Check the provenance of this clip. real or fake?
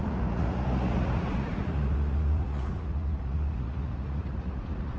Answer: fake